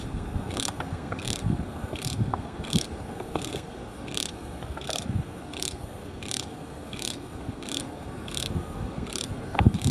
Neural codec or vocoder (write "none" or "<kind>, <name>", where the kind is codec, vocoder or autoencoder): codec, SNAC